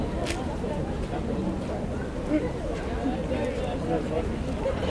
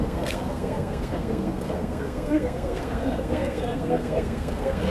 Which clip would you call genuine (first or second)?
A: first